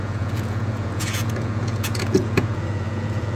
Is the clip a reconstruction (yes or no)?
yes